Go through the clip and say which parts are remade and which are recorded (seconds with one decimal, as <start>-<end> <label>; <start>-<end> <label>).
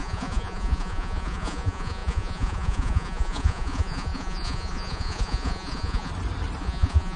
0.0-6.1 remade; 6.1-6.6 recorded; 6.6-7.2 remade